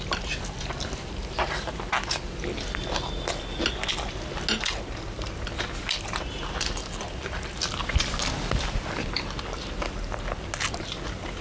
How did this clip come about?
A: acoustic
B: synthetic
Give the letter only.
A